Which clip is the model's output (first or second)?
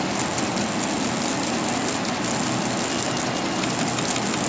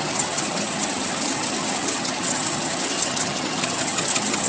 second